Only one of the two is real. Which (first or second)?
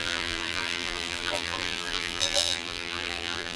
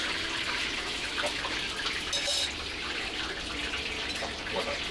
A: second